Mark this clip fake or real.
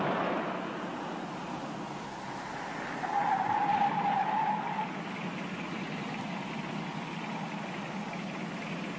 real